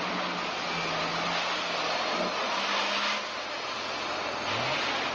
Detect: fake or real real